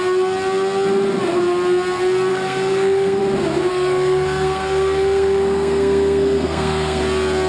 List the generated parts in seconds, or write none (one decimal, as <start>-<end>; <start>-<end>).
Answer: 2.3-3.2; 3.7-7.0

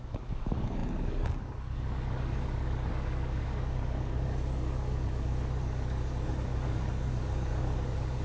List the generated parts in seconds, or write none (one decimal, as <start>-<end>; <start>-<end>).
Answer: 0.0-8.2

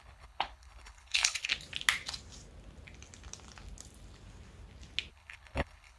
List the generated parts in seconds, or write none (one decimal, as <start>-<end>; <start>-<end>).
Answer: 0.0-1.5; 5.1-6.0